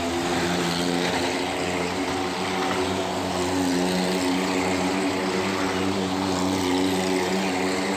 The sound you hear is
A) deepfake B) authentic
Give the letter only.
B